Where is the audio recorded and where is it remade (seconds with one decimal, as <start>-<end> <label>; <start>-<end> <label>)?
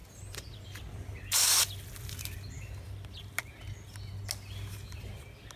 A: 0.0-5.6 recorded